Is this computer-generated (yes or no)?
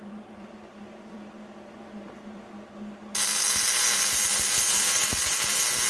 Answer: yes